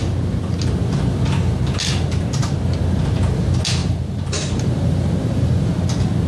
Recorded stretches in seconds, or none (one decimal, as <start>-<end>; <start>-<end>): 0.0-3.8; 5.7-6.3